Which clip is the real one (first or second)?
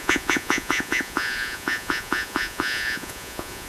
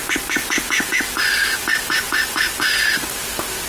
second